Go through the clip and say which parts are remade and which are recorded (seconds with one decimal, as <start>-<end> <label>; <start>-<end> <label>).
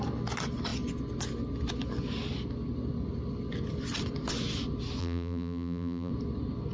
0.0-5.0 recorded; 5.0-6.1 remade; 6.1-6.7 recorded